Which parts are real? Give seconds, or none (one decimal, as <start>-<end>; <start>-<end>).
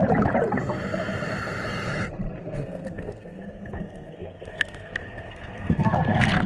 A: 0.0-2.4